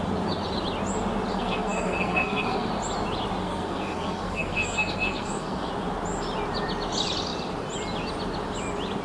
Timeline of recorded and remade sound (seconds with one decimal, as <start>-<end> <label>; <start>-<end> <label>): 0.0-1.3 recorded; 1.3-2.7 remade; 2.7-3.4 recorded; 3.4-5.7 remade; 5.7-9.0 recorded